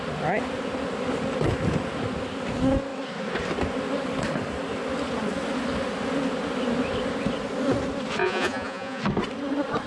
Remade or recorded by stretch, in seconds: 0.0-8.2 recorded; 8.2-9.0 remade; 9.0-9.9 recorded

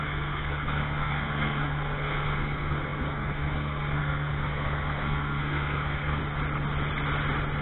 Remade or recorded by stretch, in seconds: 0.0-6.2 remade; 6.2-7.6 recorded

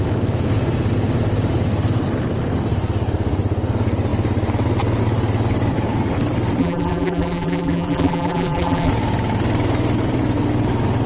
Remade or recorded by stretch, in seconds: 0.0-6.6 recorded; 6.6-8.9 remade; 8.9-11.1 recorded

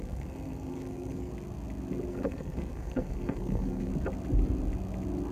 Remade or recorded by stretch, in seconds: 0.0-1.3 remade; 1.3-2.1 recorded; 2.1-3.9 remade; 3.9-5.3 recorded

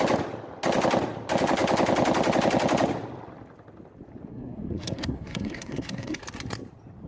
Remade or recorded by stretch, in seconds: 0.0-4.3 recorded; 4.3-6.2 remade; 6.2-7.1 recorded

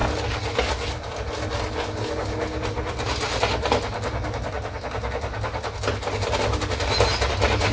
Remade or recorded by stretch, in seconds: 0.0-7.7 recorded

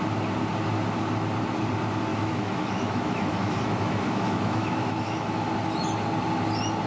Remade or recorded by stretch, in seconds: 0.0-2.1 recorded; 2.1-5.5 remade; 5.5-6.9 recorded

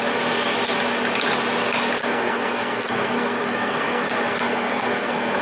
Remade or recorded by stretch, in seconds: 0.0-2.0 recorded; 2.0-5.4 remade